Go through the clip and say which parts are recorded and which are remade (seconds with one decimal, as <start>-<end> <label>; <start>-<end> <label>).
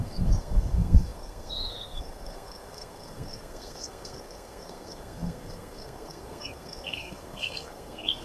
0.0-8.2 remade